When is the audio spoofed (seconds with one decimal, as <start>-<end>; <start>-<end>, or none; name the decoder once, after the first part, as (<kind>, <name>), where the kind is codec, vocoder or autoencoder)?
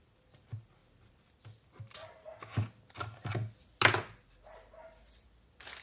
none